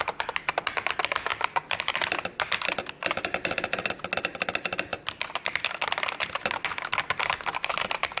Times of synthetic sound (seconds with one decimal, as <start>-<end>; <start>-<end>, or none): none